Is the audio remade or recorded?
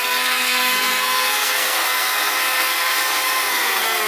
remade